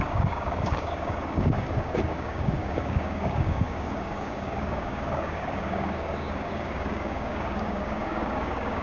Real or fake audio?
fake